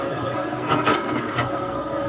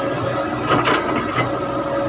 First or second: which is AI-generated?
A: first